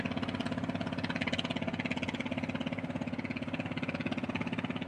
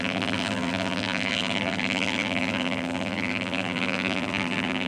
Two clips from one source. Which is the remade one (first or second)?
second